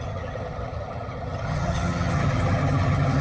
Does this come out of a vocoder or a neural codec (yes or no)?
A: yes